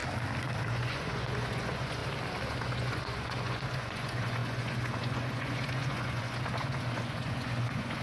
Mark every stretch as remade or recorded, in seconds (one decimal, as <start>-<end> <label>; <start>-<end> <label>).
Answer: 0.0-0.7 recorded; 0.7-2.0 remade; 2.0-2.5 recorded; 2.5-8.0 remade